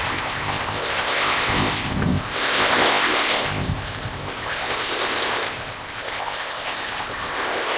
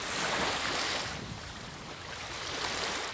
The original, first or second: second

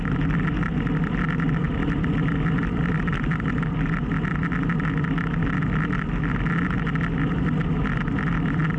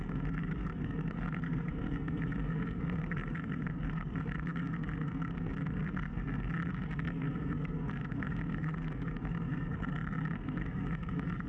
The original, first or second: first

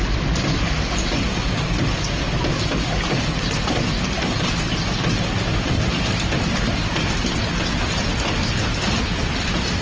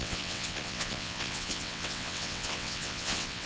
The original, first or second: first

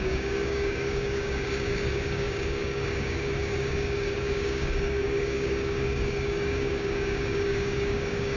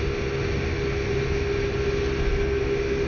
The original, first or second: second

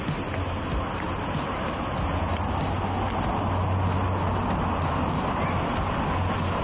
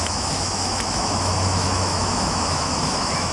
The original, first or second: first